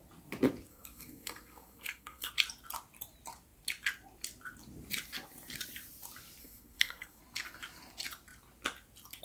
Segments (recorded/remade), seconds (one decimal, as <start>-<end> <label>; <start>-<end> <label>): 0.0-0.7 recorded; 0.7-2.3 remade; 2.3-6.4 recorded; 6.4-7.2 remade; 7.2-9.2 recorded